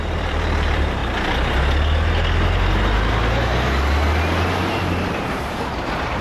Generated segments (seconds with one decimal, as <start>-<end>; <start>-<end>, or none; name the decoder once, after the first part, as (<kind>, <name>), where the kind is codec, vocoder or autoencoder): 0.0-1.0 (vocoder, BigVGAN v2); 4.7-6.2